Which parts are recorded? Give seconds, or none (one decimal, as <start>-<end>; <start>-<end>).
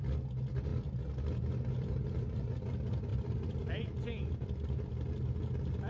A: 0.0-3.1; 4.9-5.9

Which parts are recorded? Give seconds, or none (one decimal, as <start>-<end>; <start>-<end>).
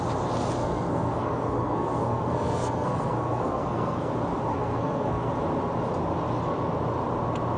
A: 0.0-0.6; 4.1-4.5; 5.3-7.6